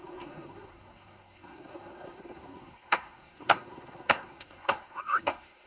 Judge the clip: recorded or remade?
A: remade